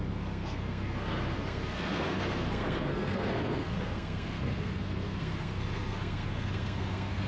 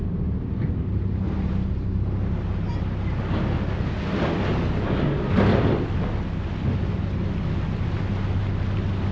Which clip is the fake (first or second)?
first